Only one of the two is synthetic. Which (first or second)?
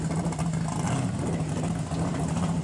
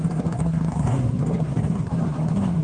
second